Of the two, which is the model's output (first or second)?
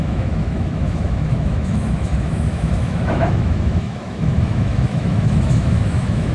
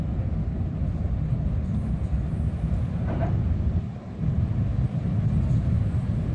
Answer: first